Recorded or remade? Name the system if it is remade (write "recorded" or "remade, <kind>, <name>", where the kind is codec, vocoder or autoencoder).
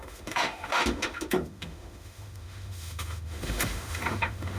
remade, autoencoder, DAC-VAE